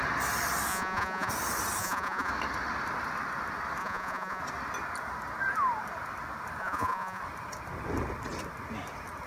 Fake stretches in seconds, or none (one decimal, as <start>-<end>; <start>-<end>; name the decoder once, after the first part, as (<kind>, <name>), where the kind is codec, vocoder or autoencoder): 0.7-1.3 (vocoder, Vocos); 1.8-2.3; 3.8-4.4; 6.6-7.2